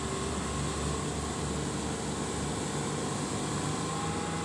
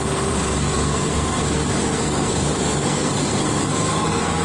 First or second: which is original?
first